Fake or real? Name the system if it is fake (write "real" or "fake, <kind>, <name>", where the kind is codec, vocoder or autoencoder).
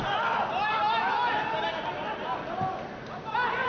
real